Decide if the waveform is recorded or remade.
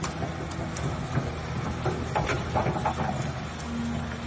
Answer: recorded